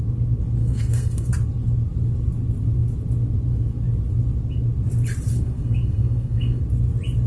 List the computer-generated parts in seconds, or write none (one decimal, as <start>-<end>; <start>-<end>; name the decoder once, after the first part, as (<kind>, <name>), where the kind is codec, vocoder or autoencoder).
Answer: 0.6-1.3 (codec, SNAC); 5.3-6.6